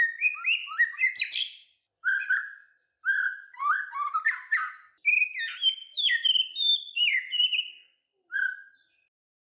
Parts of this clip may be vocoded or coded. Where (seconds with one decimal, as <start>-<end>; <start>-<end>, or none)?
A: 5.8-9.5